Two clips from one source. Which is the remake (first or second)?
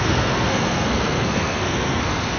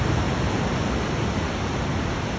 first